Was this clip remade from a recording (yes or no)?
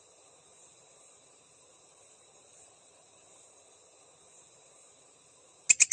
no